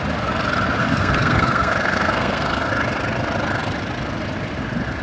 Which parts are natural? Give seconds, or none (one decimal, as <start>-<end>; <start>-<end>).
0.0-0.8; 2.7-5.0